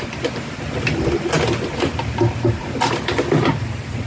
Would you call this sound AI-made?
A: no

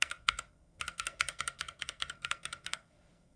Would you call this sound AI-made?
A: yes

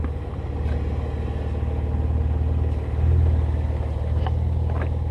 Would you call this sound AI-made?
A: no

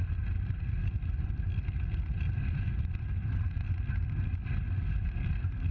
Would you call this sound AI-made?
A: no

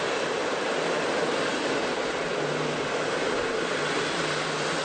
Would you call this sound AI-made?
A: no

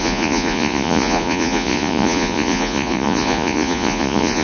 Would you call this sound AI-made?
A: yes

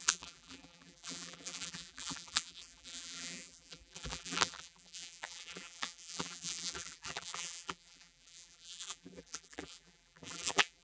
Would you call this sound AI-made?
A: yes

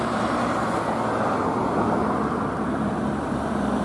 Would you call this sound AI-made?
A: yes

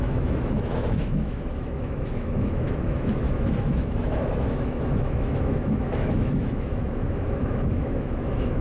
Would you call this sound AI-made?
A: yes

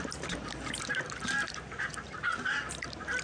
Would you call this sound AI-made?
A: no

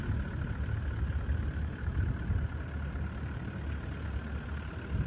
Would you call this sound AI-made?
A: no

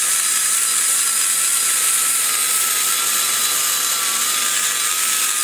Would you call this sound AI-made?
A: no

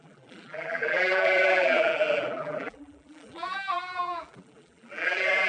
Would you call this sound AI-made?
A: yes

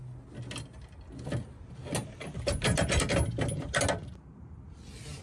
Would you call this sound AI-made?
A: no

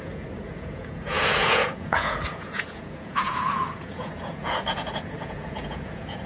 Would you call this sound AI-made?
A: yes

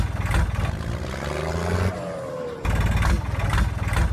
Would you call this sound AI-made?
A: no